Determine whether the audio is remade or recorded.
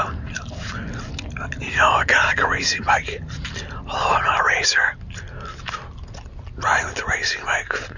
recorded